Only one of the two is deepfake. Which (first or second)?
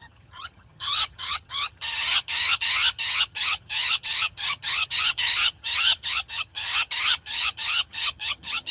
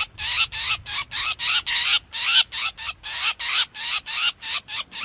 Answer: first